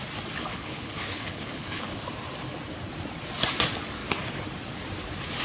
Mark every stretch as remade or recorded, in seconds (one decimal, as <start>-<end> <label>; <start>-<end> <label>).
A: 0.0-0.5 recorded; 0.5-2.0 remade; 2.0-5.4 recorded

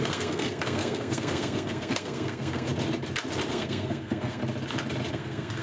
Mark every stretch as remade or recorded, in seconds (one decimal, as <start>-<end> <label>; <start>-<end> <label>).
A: 0.0-2.7 remade; 2.7-3.5 recorded; 3.5-4.4 remade; 4.4-5.1 recorded; 5.1-5.6 remade

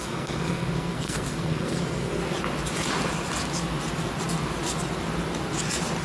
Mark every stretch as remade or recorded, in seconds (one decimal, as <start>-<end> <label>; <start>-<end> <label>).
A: 0.0-2.2 remade; 2.2-6.0 recorded

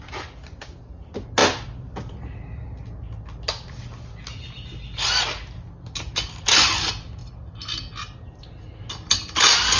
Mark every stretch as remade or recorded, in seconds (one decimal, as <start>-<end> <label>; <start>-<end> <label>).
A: 0.0-9.8 recorded